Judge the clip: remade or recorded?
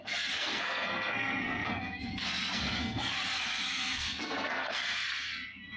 remade